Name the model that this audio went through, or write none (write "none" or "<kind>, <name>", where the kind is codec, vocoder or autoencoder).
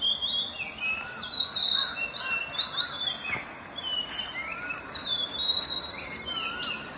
none